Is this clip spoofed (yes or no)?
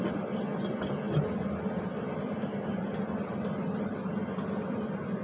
no